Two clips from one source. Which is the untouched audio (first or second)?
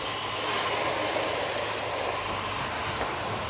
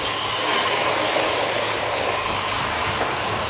first